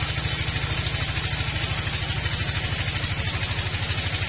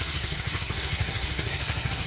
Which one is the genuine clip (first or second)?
first